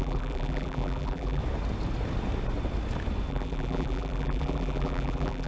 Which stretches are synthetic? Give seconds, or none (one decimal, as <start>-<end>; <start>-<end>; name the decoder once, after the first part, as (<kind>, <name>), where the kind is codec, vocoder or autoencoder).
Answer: 0.0-1.4 (vocoder, BigVGAN v2); 3.3-5.5